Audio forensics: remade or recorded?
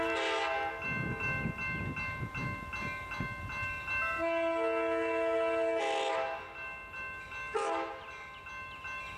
recorded